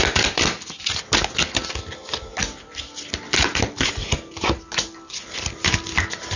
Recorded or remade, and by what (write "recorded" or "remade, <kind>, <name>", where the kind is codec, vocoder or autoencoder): recorded